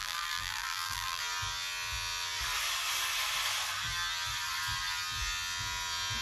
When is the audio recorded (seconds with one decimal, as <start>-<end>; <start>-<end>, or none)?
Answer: 1.2-6.2